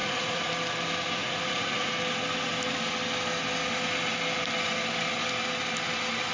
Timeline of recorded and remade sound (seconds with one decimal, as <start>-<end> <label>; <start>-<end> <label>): 0.0-0.5 remade; 0.5-1.2 recorded; 1.2-1.9 remade; 1.9-6.3 recorded